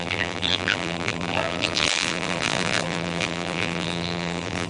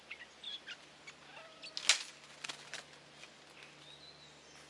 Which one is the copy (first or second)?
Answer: first